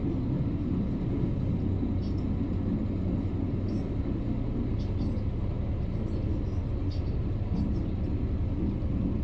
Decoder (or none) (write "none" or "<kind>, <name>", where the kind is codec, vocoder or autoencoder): none